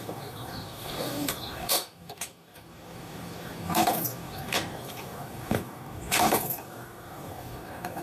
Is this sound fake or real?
fake